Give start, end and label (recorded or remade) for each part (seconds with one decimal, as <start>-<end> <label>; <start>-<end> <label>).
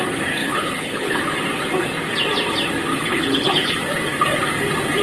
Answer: 0.0-0.4 recorded; 0.4-1.2 remade; 1.2-2.9 recorded; 2.9-3.8 remade; 3.8-5.0 recorded